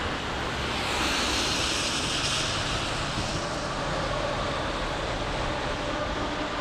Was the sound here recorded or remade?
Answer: recorded